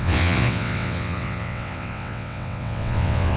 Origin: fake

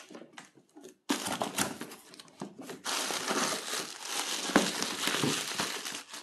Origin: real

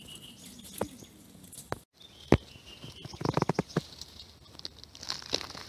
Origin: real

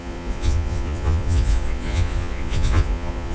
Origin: fake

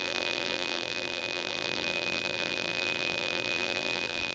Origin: fake